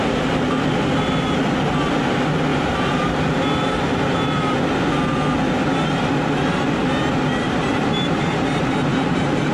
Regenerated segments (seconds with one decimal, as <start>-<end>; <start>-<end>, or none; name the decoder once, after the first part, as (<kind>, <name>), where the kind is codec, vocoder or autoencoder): 2.5-3.2 (vocoder, BigVGAN v2); 7.4-9.5